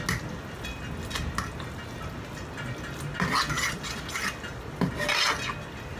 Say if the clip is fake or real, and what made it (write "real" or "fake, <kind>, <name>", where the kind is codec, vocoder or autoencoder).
real